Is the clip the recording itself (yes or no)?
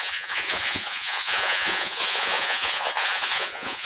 no